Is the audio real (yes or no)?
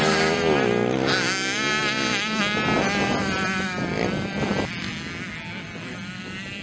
yes